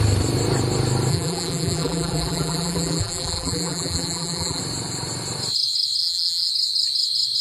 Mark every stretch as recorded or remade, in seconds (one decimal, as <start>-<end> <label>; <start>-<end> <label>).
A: 0.0-1.1 recorded; 1.1-4.6 remade; 4.6-6.0 recorded; 6.0-6.5 remade; 6.5-7.4 recorded